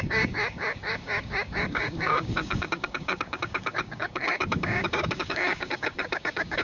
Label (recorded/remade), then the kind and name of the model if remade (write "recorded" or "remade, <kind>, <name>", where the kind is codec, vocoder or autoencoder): remade, codec, DAC